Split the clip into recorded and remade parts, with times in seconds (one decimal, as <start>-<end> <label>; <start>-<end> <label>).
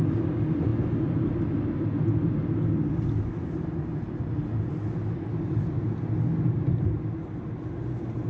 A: 0.0-8.3 recorded